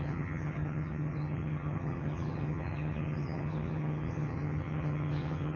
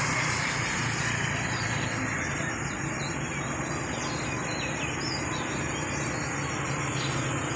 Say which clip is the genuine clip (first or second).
second